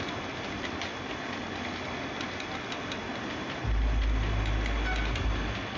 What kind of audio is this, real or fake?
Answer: real